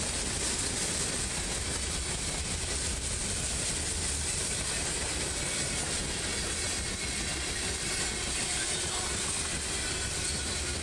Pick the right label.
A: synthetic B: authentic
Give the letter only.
B